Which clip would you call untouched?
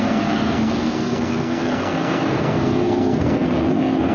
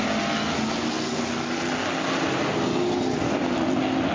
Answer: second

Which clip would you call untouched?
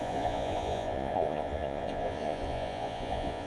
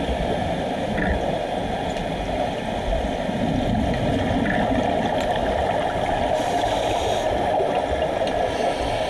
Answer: second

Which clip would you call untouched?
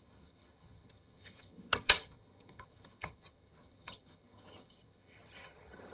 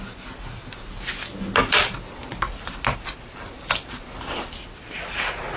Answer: second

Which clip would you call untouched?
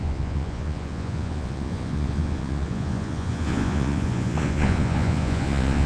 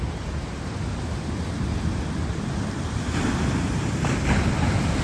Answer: second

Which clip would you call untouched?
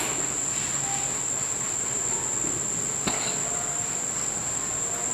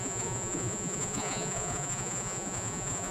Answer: first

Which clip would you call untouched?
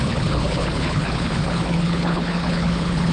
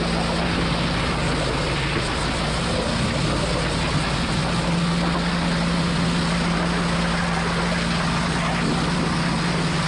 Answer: second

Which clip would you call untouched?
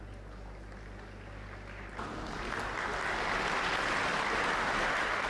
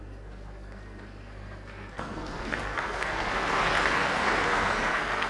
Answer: first